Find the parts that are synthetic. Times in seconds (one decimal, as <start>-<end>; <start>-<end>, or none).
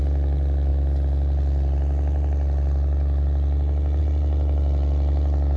none